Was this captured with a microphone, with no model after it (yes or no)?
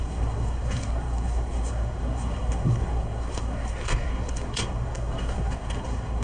no